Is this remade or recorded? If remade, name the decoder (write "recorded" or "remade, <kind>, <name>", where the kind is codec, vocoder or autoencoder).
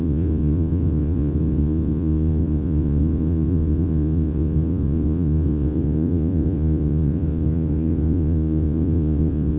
remade, vocoder, Vocos